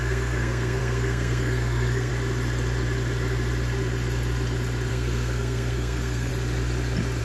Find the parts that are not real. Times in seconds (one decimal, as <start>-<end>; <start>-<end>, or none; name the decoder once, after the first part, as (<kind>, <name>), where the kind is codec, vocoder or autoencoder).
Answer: 0.0-2.1 (codec, SNAC); 4.9-6.3

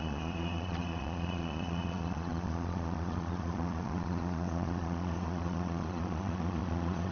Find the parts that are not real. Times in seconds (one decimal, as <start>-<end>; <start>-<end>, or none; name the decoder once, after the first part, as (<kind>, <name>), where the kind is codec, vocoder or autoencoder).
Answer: 0.0-7.1 (vocoder, Vocos)

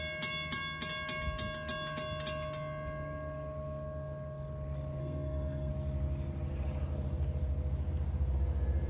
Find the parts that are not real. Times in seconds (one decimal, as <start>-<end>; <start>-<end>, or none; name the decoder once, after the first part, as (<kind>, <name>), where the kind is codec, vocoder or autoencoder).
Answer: 5.0-5.7 (codec, SNAC)